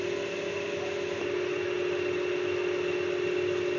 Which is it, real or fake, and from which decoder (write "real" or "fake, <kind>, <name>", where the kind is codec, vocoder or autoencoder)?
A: real